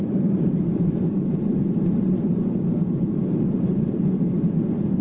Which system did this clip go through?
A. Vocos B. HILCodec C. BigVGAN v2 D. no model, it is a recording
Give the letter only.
C